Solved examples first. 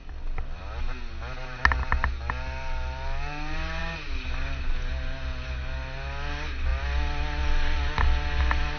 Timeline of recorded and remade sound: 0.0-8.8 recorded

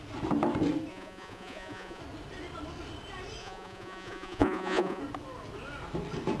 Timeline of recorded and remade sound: 0.0-0.9 recorded; 0.9-2.0 remade; 2.0-3.4 recorded; 3.4-5.0 remade; 5.0-6.4 recorded

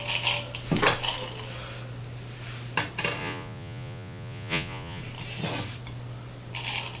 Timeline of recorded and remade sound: 0.0-3.2 recorded; 3.2-5.0 remade; 5.0-7.0 recorded

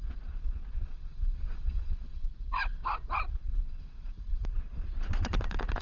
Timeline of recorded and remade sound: 0.0-5.8 remade

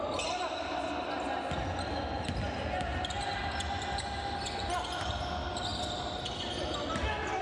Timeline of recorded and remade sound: 0.0-7.4 recorded

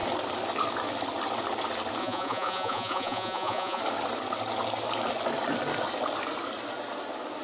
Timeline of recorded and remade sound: 0.0-2.0 recorded; 2.0-3.8 remade; 3.8-7.4 recorded

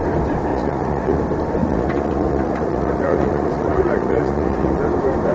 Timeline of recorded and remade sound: 0.0-0.5 recorded; 0.5-1.2 remade; 1.2-1.6 recorded; 1.6-4.8 remade; 4.8-5.3 recorded